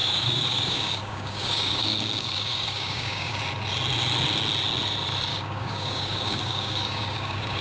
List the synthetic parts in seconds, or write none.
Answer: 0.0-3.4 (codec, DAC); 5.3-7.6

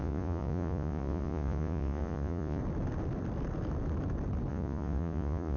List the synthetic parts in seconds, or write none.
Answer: 0.0-2.6 (vocoder, Vocos); 4.5-5.6

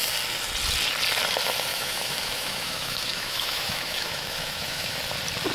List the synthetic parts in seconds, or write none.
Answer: 1.7-5.0 (autoencoder, DAC-VAE)

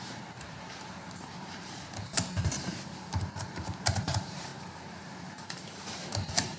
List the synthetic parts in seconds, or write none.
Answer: 0.0-4.5 (vocoder, BigVGAN v2); 5.2-6.6

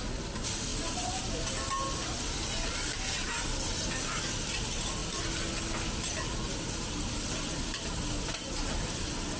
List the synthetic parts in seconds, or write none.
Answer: 0.7-1.2 (vocoder, BigVGAN v2)

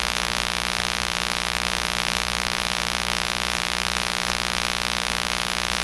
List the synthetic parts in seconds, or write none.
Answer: 0.0-5.8 (vocoder, BigVGAN v2)

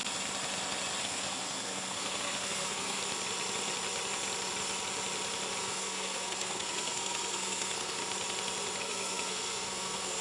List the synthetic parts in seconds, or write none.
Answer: 1.0-3.0 (codec, SNAC); 5.6-8.0; 8.8-10.2